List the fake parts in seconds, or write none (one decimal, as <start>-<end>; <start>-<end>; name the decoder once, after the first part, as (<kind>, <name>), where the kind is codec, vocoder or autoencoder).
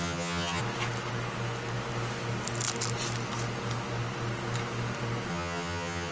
0.0-0.6 (vocoder, HiFi-GAN); 5.3-6.1